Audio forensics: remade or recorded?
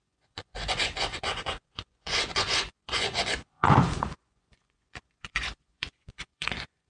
remade